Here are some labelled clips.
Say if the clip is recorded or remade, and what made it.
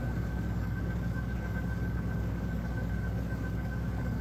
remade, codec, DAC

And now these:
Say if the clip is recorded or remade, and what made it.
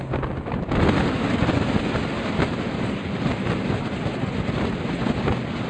recorded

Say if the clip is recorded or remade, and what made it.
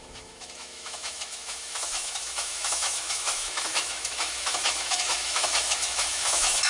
remade, autoencoder, DAC-VAE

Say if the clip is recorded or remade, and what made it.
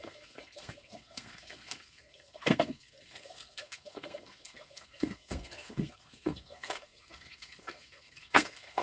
remade, codec, SNAC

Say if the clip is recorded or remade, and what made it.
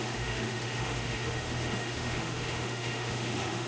remade, autoencoder, DAC-VAE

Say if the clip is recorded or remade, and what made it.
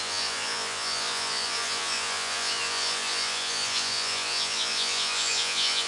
remade, vocoder, Vocos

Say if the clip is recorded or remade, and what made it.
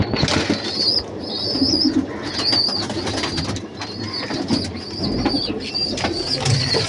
recorded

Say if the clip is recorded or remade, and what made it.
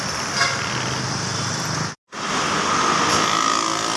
recorded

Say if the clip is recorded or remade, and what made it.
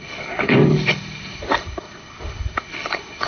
remade, codec, HILCodec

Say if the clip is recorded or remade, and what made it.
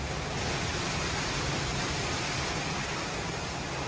recorded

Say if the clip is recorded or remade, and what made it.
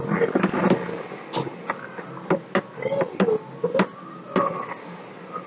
recorded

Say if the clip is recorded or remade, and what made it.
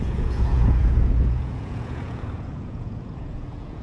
remade, vocoder, Vocos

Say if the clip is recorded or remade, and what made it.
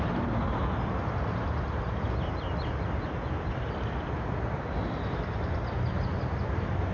recorded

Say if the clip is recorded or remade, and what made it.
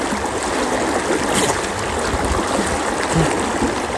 recorded